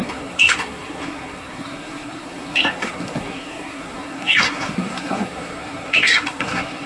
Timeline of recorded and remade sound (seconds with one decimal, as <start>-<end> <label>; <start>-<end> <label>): 0.0-6.9 remade